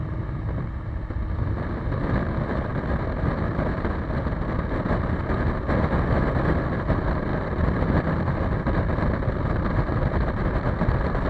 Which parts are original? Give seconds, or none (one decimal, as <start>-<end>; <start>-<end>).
0.0-7.3; 8.2-11.3